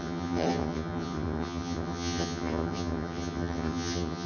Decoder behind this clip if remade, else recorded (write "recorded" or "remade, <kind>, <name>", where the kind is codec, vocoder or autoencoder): remade, vocoder, HiFi-GAN